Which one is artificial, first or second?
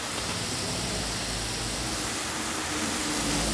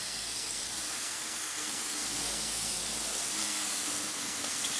second